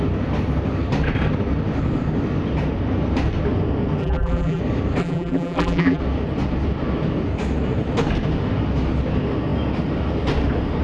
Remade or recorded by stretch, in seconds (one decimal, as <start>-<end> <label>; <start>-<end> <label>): 0.0-4.0 recorded; 4.0-4.6 remade; 4.6-5.0 recorded; 5.0-6.0 remade; 6.0-10.8 recorded